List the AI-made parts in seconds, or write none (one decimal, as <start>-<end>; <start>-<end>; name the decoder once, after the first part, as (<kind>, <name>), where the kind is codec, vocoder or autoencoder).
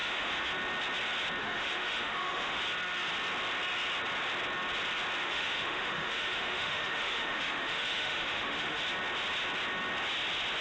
0.0-0.5 (autoencoder, DAC-VAE); 1.4-2.6; 5.2-8.8